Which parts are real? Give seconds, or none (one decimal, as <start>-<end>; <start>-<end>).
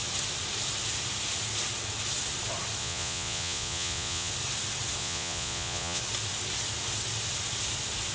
0.0-2.8; 4.3-5.0; 6.0-8.1